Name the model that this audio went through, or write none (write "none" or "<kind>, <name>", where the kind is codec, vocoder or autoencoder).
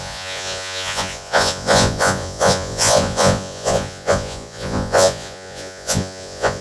vocoder, Vocos